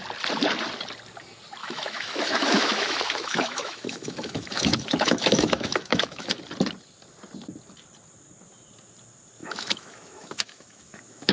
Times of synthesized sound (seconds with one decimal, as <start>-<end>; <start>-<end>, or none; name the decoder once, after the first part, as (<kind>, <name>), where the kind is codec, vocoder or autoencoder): 1.6-6.4 (autoencoder, DAC-VAE); 9.4-11.3